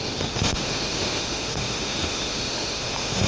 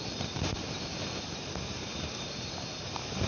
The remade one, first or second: first